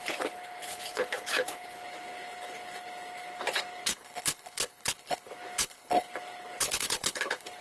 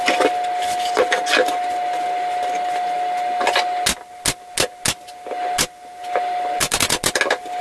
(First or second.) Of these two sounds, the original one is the second